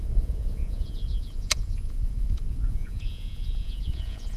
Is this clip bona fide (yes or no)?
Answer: no